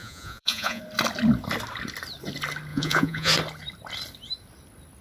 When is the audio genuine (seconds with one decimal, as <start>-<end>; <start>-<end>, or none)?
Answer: 0.8-2.7; 3.3-5.0